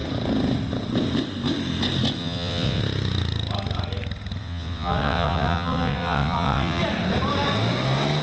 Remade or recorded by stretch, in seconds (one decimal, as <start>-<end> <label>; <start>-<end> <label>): 0.0-2.2 recorded; 2.2-2.8 remade; 2.8-4.4 recorded; 4.4-6.8 remade; 6.8-8.2 recorded